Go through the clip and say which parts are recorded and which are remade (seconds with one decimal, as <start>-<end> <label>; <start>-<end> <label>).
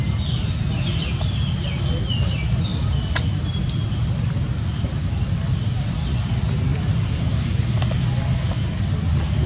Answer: 0.0-6.7 recorded; 6.7-7.6 remade; 7.6-9.5 recorded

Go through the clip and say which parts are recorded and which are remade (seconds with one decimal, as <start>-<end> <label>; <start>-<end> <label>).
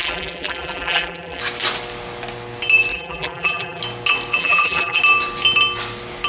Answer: 0.0-1.4 remade; 1.4-2.9 recorded; 2.9-3.8 remade; 3.8-4.4 recorded; 4.4-5.0 remade; 5.0-6.3 recorded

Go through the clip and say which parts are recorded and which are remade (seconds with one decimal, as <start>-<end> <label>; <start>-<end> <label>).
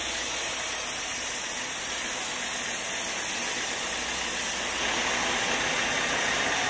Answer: 0.0-1.9 remade; 1.9-6.7 recorded